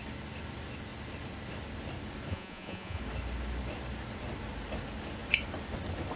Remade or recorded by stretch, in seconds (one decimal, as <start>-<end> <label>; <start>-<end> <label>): 0.0-2.3 recorded; 2.3-3.0 remade; 3.0-6.2 recorded

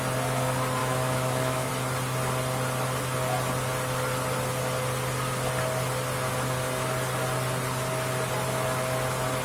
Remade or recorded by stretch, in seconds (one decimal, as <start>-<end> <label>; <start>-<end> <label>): 0.0-0.8 recorded; 0.8-1.7 remade; 1.7-9.4 recorded

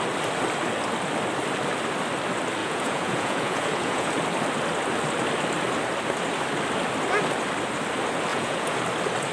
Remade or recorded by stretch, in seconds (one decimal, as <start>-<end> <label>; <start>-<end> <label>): 0.0-2.6 recorded; 2.6-4.1 remade; 4.1-8.3 recorded; 8.3-8.8 remade; 8.8-9.3 recorded

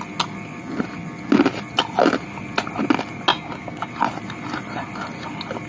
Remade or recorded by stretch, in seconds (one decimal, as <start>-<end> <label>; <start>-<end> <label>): 0.0-3.3 recorded; 3.3-3.9 remade; 3.9-5.7 recorded